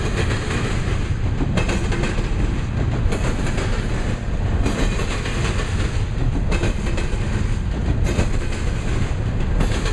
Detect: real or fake real